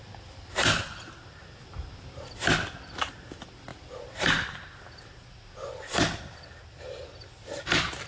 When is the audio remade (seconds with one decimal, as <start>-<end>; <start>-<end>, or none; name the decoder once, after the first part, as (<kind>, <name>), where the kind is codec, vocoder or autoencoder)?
none